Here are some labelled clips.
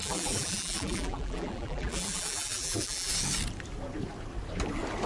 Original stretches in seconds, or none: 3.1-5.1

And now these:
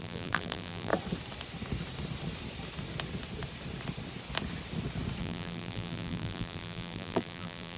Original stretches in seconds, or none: 0.9-5.2

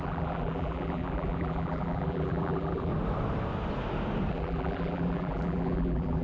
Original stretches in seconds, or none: 2.9-4.3

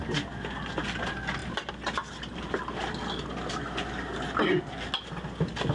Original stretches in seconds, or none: 0.0-5.7

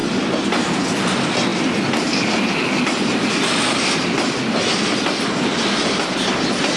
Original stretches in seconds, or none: 0.0-5.5; 6.1-6.8

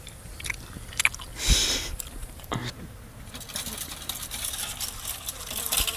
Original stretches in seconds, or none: 0.0-2.6; 3.2-6.0